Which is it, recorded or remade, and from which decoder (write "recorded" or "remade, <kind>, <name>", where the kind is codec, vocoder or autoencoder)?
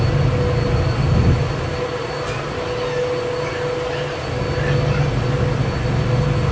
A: recorded